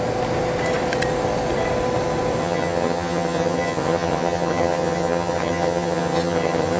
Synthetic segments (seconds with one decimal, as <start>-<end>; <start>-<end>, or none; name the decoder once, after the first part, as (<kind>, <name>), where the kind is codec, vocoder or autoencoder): 2.4-6.8 (vocoder, HiFi-GAN)